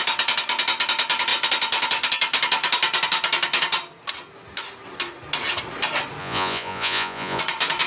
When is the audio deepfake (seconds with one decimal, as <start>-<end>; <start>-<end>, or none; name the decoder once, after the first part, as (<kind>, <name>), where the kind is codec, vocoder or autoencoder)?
6.2-7.4 (vocoder, Vocos)